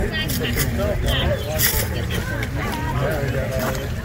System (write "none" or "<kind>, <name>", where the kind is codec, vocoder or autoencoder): none